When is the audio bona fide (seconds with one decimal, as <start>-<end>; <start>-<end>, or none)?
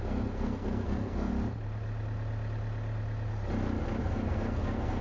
1.3-4.0